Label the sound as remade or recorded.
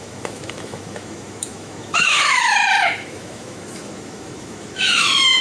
remade